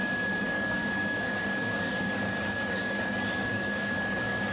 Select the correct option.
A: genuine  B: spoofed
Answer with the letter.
B